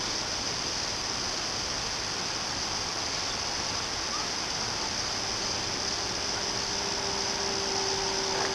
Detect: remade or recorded recorded